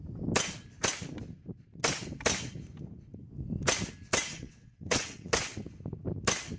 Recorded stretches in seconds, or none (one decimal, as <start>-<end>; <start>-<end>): 0.0-4.3; 5.3-6.6